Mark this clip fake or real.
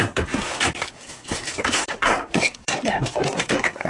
fake